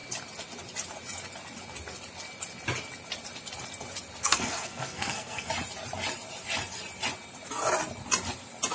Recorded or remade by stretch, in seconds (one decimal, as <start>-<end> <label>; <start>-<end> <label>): 0.0-4.2 recorded; 4.2-5.5 remade; 5.5-8.7 recorded